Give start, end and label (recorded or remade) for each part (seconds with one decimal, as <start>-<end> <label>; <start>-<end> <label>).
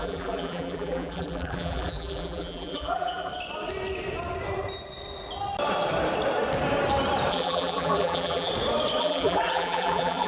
0.0-3.3 remade; 3.3-7.3 recorded; 7.3-8.5 remade; 8.5-9.0 recorded; 9.0-10.3 remade